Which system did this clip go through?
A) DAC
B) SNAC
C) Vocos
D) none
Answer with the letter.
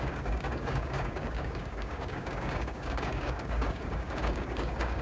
A